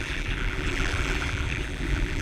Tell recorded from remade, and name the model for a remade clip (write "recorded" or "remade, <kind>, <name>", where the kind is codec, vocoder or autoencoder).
remade, vocoder, BigVGAN v2